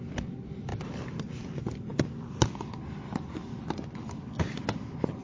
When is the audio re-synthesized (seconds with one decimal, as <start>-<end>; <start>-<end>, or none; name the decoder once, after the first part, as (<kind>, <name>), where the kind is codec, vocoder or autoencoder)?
none